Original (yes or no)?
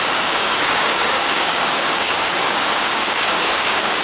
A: no